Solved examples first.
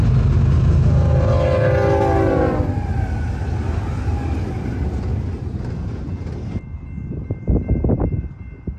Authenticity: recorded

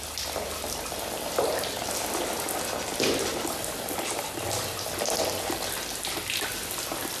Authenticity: recorded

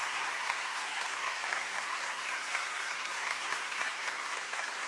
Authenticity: remade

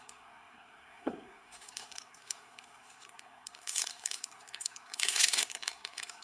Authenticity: remade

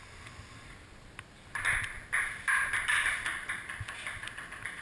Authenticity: recorded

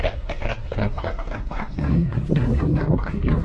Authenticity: remade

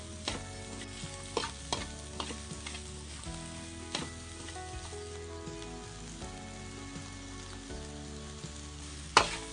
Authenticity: recorded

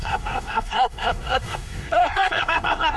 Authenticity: remade